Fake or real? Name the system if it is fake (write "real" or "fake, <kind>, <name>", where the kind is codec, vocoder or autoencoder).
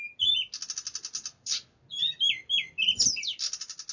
real